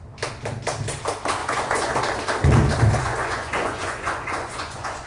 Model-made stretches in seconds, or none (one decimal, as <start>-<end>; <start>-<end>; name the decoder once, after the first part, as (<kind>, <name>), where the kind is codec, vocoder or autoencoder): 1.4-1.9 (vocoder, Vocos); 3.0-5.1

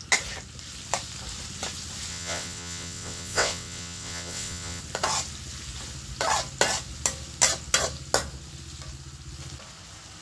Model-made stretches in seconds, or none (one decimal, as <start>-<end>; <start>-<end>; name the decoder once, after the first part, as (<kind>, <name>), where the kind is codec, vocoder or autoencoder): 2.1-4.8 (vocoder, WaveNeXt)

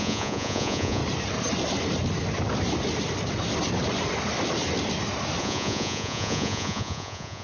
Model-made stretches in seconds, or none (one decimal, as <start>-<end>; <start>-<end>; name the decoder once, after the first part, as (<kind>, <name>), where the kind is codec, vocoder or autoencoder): 0.0-1.0 (vocoder, Vocos); 5.4-7.4

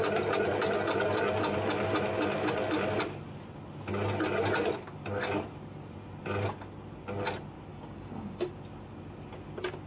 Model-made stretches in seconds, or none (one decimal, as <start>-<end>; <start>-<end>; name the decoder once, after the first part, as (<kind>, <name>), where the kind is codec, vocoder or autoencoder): 7.7-8.5 (codec, DAC)

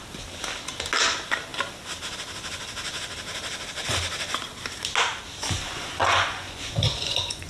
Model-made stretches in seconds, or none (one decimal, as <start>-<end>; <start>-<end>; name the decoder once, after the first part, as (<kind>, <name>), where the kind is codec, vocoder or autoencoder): 5.4-7.5 (vocoder, Vocos)